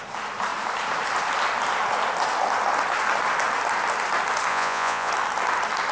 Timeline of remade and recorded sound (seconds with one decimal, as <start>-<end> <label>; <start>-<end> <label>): 0.0-4.5 recorded; 4.5-5.1 remade; 5.1-5.9 recorded